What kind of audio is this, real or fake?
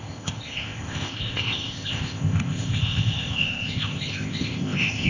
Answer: fake